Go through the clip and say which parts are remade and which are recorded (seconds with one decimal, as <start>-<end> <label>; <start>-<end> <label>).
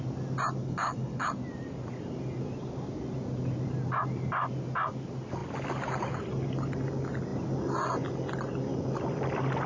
0.0-0.6 recorded; 0.6-1.3 remade; 1.3-9.7 recorded